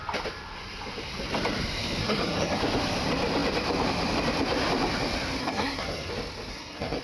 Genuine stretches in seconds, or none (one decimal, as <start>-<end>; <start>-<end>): 0.0-2.0; 2.6-5.4; 6.1-6.5